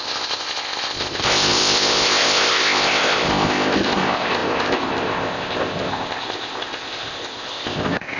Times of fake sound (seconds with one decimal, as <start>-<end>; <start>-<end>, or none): 0.0-8.2